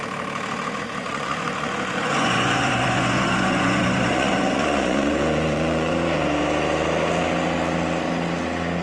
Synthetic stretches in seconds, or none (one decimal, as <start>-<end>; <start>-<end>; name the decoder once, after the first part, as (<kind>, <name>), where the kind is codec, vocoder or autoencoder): 1.0-5.9 (vocoder, Vocos)